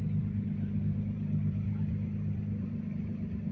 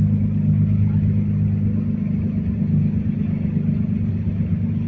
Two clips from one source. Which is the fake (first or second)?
first